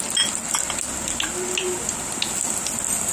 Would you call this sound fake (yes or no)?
no